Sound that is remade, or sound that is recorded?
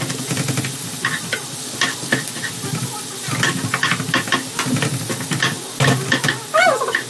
recorded